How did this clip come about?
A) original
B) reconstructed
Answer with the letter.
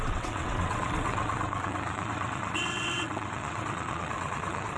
B